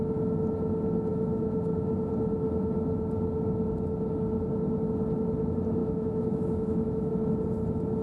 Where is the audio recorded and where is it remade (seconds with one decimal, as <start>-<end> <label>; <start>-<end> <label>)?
0.0-1.1 recorded; 1.1-2.1 remade; 2.1-5.8 recorded; 5.8-7.1 remade; 7.1-8.0 recorded